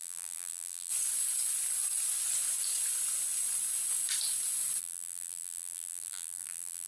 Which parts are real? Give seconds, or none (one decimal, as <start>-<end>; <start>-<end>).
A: 0.9-4.8